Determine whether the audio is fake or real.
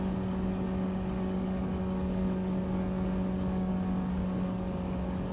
fake